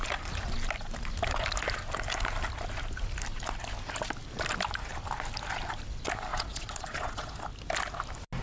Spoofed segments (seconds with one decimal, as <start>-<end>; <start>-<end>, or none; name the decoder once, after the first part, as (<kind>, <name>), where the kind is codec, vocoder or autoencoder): 6.3-7.3 (vocoder, Vocos)